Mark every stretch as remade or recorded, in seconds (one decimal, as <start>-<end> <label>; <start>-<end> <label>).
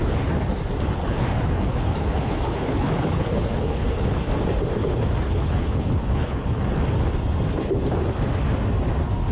0.0-1.0 recorded; 1.0-3.9 remade; 3.9-4.8 recorded; 4.8-6.9 remade; 6.9-9.3 recorded